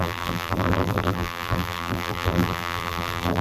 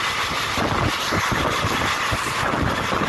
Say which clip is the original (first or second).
second